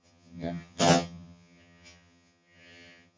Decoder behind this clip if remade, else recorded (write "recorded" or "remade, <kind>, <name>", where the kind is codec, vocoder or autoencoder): remade, vocoder, HiFi-GAN